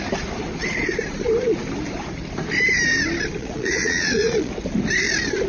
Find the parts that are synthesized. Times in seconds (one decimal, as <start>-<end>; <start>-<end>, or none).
3.4-4.5